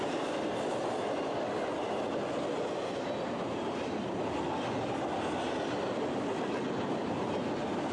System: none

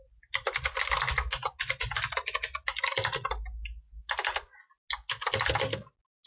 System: none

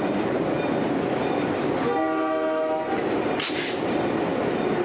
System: none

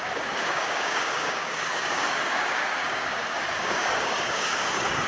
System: codec, DAC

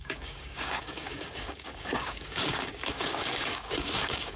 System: codec, DAC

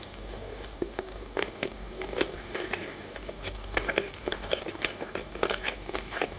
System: codec, DAC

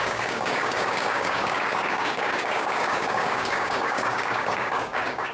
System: codec, DAC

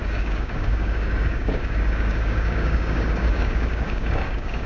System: codec, DAC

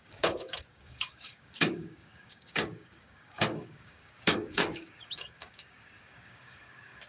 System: codec, DAC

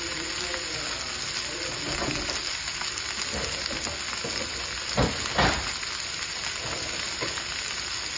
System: none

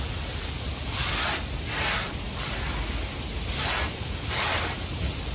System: none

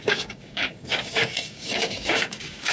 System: codec, DAC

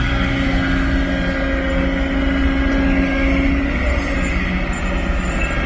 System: none